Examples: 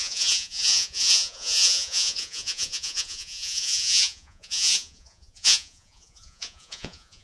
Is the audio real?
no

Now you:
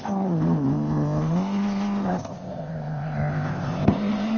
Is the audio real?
no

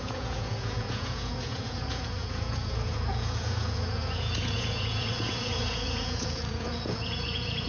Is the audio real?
no